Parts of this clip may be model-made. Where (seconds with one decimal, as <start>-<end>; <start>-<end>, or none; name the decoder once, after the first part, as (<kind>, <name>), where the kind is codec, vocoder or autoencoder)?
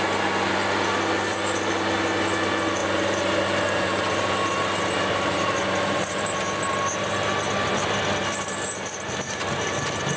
2.8-6.4 (vocoder, BigVGAN v2)